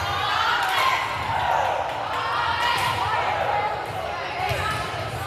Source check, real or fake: real